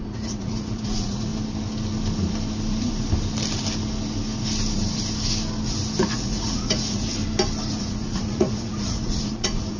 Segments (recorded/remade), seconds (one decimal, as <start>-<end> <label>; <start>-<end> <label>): 0.0-1.3 remade; 1.3-6.1 recorded; 6.1-7.2 remade; 7.2-7.8 recorded; 7.8-9.8 remade

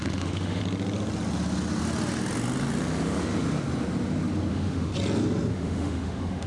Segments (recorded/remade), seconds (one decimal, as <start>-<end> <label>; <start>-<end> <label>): 0.0-0.6 remade; 0.6-4.5 recorded; 4.5-4.9 remade; 4.9-5.5 recorded; 5.5-6.5 remade

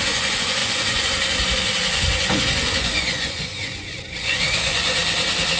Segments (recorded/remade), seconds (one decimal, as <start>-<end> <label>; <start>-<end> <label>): 0.0-5.0 remade; 5.0-5.6 recorded

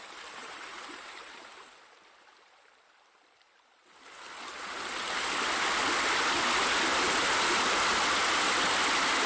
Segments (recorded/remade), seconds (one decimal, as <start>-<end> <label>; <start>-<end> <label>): 0.0-0.4 recorded; 0.4-1.7 remade; 1.7-9.3 recorded

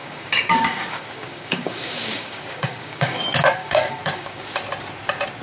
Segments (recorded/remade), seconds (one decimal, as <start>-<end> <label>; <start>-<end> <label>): 0.0-3.2 remade; 3.2-3.6 recorded; 3.6-4.6 remade; 4.6-5.4 recorded

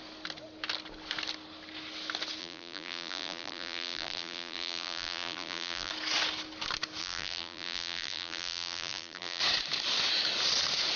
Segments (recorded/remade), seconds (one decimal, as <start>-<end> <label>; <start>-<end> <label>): 0.0-2.4 recorded; 2.4-5.9 remade; 5.9-7.0 recorded; 7.0-9.4 remade; 9.4-11.0 recorded

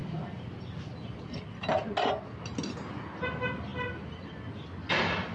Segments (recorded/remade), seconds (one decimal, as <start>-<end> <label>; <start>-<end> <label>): 0.0-5.3 recorded

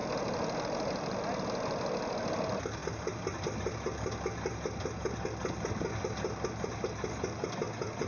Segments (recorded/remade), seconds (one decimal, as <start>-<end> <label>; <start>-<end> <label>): 0.0-8.1 recorded